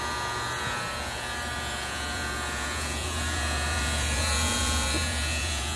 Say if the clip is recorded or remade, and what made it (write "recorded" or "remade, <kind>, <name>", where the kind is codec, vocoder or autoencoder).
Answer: remade, vocoder, Vocos